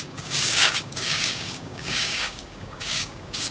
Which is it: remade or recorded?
remade